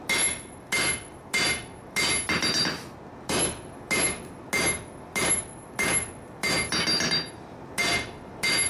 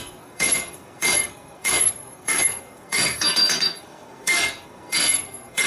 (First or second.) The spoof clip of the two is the second